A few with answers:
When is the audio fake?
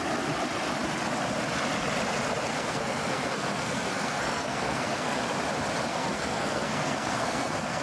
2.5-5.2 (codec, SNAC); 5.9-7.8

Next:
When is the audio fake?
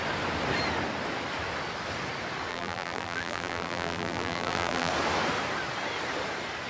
2.5-4.9 (vocoder, BigVGAN v2)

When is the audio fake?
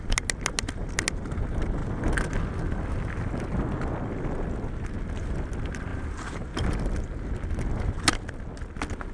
5.9-6.8 (vocoder, BigVGAN v2)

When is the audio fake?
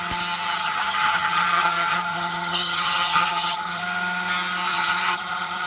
0.6-3.8 (vocoder, HiFi-GAN); 4.7-5.7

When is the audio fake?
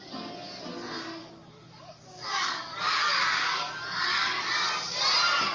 1.2-4.5 (codec, DAC)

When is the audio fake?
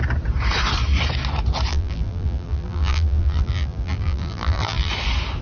1.7-4.9 (vocoder, BigVGAN v2)